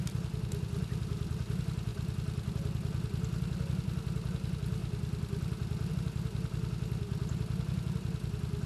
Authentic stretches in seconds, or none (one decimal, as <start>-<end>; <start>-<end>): 0.0-8.7